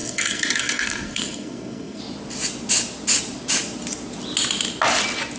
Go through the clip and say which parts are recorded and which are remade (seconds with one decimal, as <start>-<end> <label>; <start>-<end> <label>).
0.0-2.0 remade; 2.0-5.4 recorded